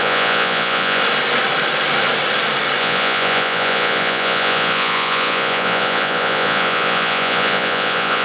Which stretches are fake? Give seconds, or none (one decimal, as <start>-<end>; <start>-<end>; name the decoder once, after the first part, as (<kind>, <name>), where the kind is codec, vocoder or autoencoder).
0.0-1.0 (vocoder, Vocos); 2.8-8.2